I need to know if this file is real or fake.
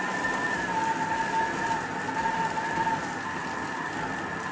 real